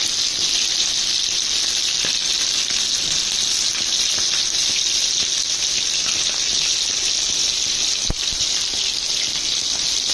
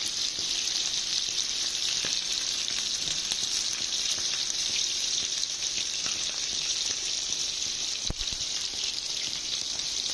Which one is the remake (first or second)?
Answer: second